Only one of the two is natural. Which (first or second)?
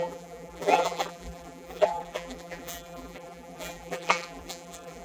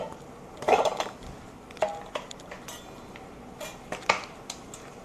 second